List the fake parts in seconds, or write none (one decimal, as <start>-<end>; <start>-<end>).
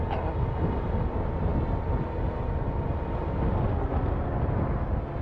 none